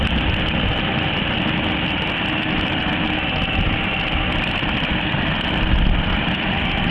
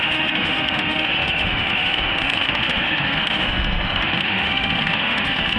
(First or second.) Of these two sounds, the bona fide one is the first